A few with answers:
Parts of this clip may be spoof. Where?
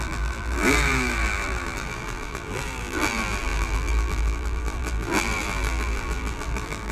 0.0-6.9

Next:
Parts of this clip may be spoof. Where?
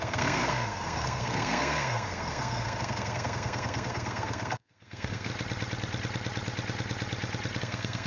0.0-5.3; 7.6-8.1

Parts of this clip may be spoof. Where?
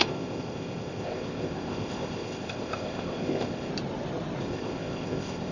0.0-3.7; 4.4-5.5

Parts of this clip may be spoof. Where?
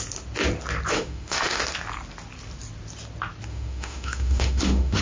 0.9-1.6; 3.5-5.0